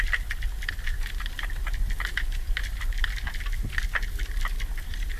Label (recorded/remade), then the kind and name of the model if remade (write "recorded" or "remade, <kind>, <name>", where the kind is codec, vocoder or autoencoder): recorded